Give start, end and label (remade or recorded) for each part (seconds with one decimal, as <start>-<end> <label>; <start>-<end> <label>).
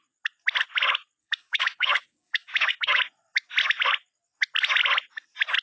0.0-1.2 recorded; 1.2-3.0 remade; 3.0-5.6 recorded